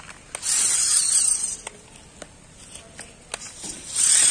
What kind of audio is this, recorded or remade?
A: recorded